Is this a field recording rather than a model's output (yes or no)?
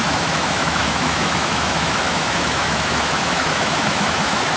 no